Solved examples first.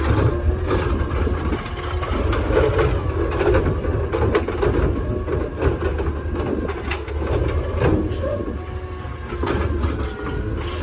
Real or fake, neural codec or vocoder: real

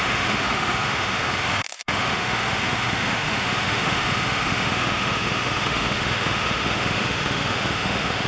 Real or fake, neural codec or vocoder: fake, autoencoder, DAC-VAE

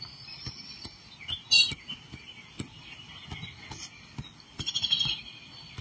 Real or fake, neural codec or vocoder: real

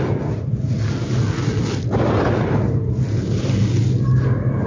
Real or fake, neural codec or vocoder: real